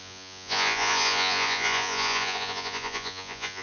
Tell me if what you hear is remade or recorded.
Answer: remade